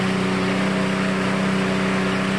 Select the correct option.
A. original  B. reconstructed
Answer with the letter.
A